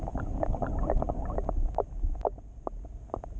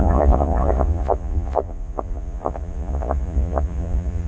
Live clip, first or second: first